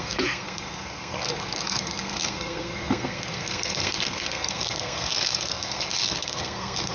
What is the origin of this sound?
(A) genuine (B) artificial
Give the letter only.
B